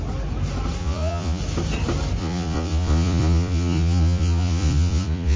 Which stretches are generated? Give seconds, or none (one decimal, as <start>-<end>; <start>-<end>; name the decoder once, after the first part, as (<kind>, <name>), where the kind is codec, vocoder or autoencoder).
0.8-1.4 (vocoder, Vocos); 2.2-5.4